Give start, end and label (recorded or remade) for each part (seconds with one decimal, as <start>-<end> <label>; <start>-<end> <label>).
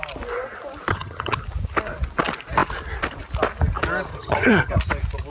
0.0-0.9 recorded; 0.9-1.4 remade; 1.4-4.1 recorded; 4.1-4.7 remade; 4.7-5.3 recorded